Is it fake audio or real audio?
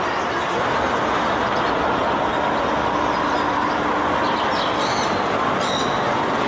real